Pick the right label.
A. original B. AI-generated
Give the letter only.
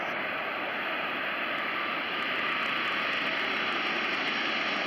A